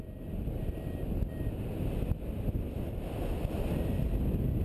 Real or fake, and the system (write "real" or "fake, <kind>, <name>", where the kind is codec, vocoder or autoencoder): real